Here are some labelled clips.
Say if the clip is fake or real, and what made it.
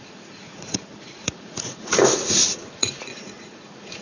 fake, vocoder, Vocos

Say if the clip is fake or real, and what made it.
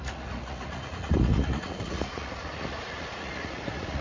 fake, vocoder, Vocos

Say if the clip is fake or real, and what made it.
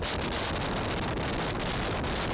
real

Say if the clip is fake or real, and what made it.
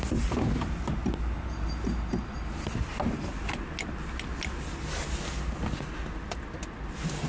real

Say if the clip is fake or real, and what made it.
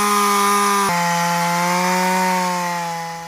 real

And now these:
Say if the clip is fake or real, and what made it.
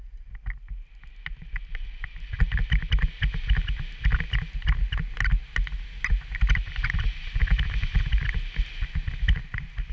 real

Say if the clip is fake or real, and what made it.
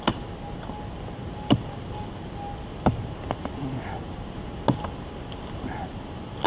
real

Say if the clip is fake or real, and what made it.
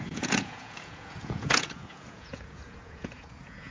fake, vocoder, Vocos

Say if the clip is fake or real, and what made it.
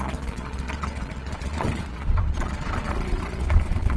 fake, vocoder, Vocos